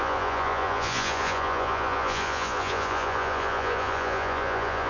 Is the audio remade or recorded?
remade